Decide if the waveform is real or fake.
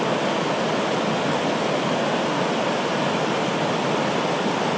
real